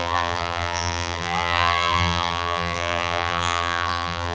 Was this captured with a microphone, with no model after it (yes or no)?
no